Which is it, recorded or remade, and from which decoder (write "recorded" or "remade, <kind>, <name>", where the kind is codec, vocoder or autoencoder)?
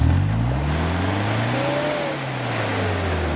recorded